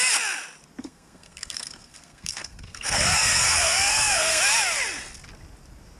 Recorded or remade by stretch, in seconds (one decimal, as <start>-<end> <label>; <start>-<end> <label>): 0.0-0.8 recorded; 0.8-4.4 remade; 4.4-6.0 recorded